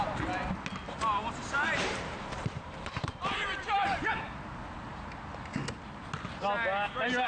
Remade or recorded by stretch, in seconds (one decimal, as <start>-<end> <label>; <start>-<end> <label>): 0.0-0.8 recorded; 0.8-4.1 remade; 4.1-4.9 recorded; 4.9-5.5 remade; 5.5-7.3 recorded